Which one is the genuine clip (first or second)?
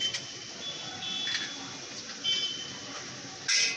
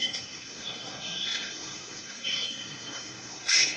first